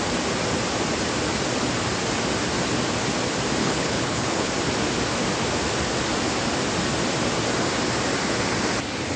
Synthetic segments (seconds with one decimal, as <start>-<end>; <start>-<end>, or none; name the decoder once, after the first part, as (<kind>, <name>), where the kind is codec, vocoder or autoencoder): 3.6-4.5 (codec, HILCodec)